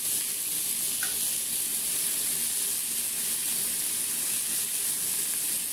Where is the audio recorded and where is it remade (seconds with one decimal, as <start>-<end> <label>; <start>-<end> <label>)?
0.0-1.7 recorded; 1.7-2.3 remade; 2.3-5.7 recorded